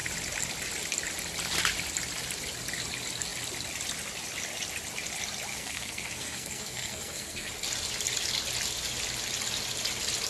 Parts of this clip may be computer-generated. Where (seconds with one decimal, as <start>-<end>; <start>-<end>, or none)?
5.5-7.5